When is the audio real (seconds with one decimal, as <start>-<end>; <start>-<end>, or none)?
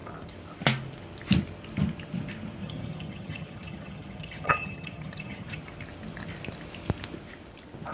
0.0-2.6; 5.6-7.9